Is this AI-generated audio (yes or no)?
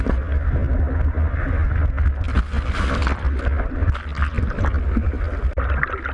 no